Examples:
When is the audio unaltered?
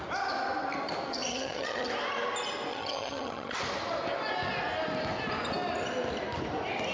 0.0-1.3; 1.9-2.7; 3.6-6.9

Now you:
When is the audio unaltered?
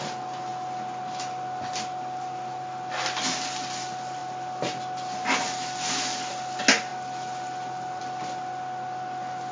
0.0-9.5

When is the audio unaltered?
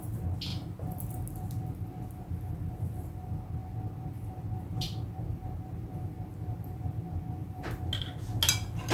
0.0-8.9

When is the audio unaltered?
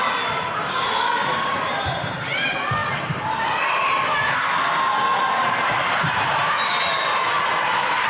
0.0-0.6; 1.1-8.1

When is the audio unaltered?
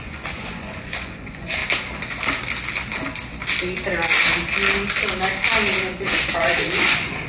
1.6-5.8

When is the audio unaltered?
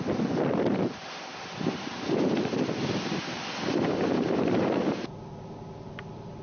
0.0-1.3; 5.1-6.4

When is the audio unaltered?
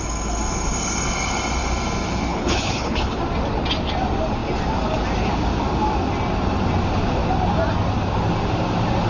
0.0-2.3; 3.2-9.1